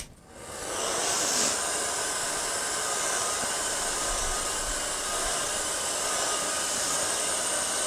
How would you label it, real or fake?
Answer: real